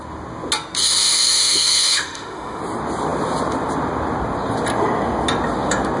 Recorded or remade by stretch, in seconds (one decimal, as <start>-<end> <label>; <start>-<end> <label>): 0.0-0.8 recorded; 0.8-2.6 remade; 2.6-6.0 recorded